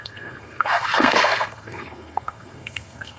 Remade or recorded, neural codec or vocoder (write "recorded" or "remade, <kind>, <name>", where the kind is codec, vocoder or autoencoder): remade, codec, SNAC